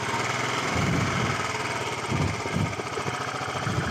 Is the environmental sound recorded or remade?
recorded